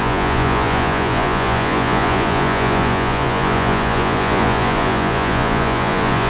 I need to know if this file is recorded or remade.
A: remade